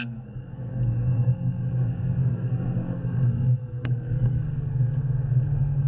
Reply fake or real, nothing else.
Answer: fake